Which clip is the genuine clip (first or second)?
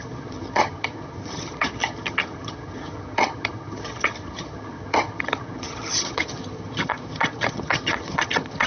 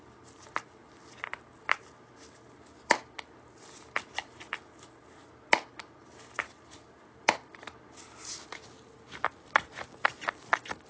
second